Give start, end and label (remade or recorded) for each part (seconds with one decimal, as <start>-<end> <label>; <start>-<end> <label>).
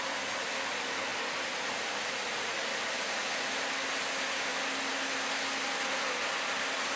0.0-7.0 recorded